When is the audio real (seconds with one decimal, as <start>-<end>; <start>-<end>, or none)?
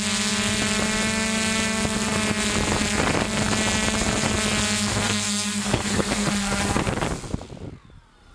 0.0-4.9; 6.3-8.3